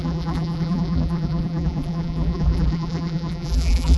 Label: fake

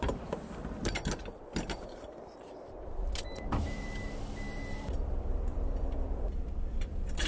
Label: fake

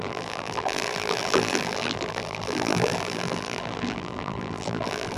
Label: fake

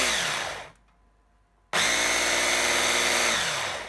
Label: real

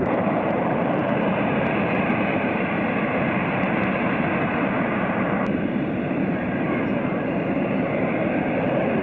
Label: fake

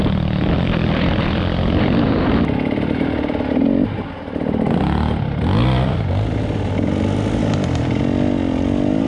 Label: real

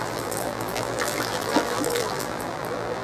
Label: fake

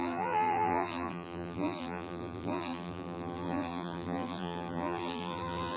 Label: fake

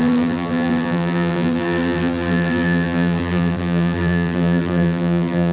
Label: fake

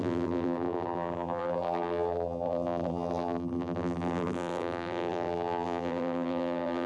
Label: fake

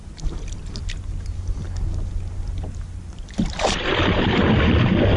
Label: real